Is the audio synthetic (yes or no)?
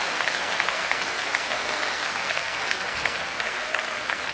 yes